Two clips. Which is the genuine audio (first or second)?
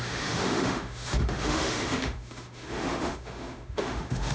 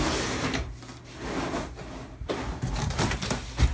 second